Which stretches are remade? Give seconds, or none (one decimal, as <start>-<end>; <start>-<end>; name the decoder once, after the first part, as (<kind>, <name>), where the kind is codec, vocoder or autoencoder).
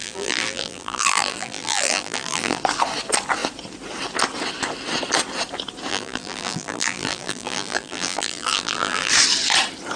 0.0-2.6 (vocoder, BigVGAN v2); 5.9-9.1